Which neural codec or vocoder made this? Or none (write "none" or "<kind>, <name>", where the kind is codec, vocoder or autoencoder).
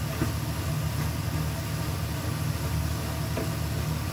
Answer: none